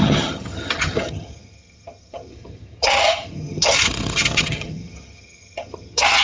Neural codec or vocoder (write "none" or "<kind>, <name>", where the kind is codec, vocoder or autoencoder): vocoder, HiFi-GAN